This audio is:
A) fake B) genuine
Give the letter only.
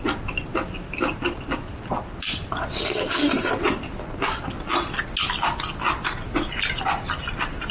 B